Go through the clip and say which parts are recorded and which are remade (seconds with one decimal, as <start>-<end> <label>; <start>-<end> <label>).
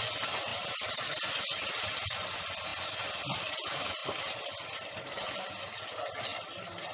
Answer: 0.0-0.5 recorded; 0.5-1.6 remade; 1.6-2.7 recorded; 2.7-3.5 remade; 3.5-4.0 recorded; 4.0-5.3 remade; 5.3-6.9 recorded